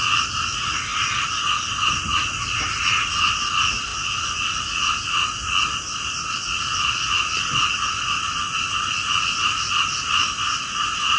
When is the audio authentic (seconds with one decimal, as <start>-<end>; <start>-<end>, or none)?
0.0-11.2

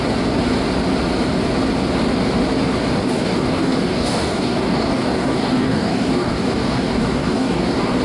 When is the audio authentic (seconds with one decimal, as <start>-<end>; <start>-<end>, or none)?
0.0-3.0